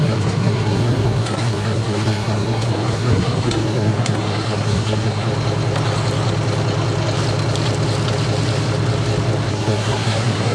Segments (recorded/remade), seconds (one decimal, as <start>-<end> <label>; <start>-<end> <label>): 0.0-5.3 remade; 5.3-9.5 recorded; 9.5-10.5 remade